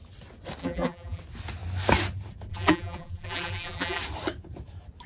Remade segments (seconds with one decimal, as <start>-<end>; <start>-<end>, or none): 0.6-1.2; 2.5-4.0